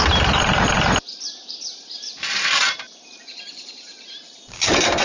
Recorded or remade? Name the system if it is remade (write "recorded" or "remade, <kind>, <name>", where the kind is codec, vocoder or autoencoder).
remade, vocoder, BigVGAN v2